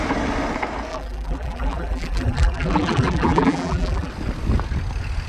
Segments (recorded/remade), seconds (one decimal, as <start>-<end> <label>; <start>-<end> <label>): 0.0-0.9 recorded; 0.9-4.1 remade; 4.1-5.3 recorded

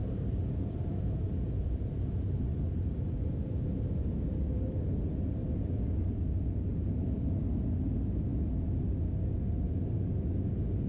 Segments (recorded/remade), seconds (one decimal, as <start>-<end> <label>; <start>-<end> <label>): 0.0-4.8 remade; 4.8-10.9 recorded

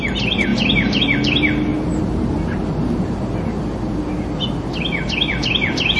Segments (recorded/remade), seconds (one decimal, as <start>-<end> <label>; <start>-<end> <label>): 0.0-1.7 remade; 1.7-5.3 recorded; 5.3-6.0 remade

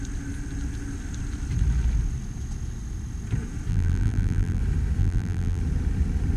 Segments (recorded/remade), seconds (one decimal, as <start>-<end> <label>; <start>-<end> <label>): 0.0-3.7 recorded; 3.7-4.6 remade; 4.6-5.0 recorded; 5.0-5.6 remade; 5.6-6.4 recorded

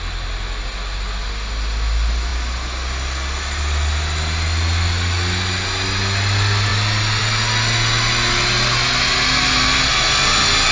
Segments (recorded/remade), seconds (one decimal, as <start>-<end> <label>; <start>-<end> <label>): 0.0-10.7 recorded

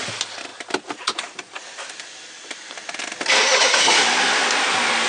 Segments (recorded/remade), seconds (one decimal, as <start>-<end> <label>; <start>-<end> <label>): 0.0-0.5 recorded; 0.5-3.6 remade; 3.6-5.1 recorded

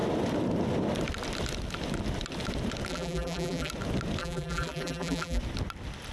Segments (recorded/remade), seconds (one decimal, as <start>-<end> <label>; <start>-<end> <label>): 0.0-2.9 recorded; 2.9-3.7 remade; 3.7-4.2 recorded; 4.2-5.4 remade; 5.4-6.1 recorded